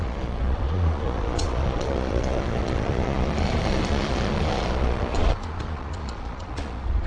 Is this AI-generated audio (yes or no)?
yes